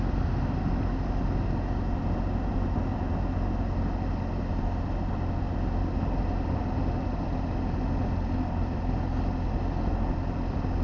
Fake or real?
real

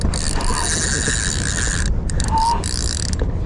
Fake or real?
real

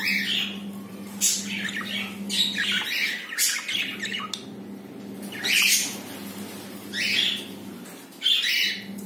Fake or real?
real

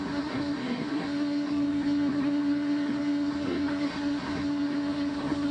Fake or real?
fake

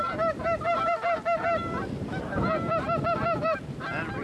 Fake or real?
real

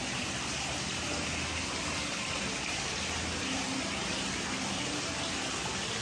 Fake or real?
real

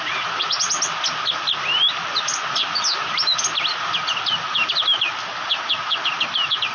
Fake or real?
real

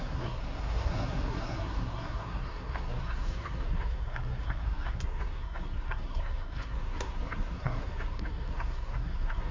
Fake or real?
fake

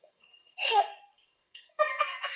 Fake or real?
fake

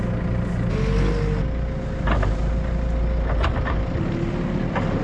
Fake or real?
real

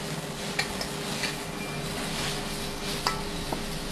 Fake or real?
real